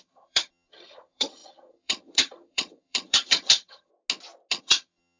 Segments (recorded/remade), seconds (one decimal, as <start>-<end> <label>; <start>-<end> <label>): 0.0-3.9 remade; 3.9-4.5 recorded; 4.5-5.2 remade